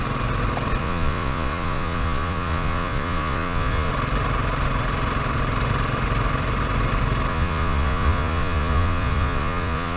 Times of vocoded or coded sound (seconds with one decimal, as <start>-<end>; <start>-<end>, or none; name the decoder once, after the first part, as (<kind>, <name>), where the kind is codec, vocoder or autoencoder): 0.8-3.9 (vocoder, Vocos); 7.3-10.0